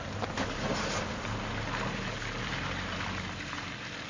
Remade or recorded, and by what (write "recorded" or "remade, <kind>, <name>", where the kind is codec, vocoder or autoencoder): recorded